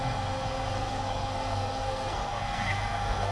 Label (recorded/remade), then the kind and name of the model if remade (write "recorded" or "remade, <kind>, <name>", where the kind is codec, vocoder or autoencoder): remade, codec, SNAC